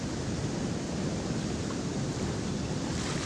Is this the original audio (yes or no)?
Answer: yes